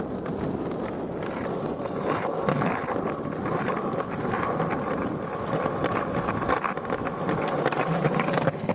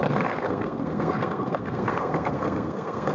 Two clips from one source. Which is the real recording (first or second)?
first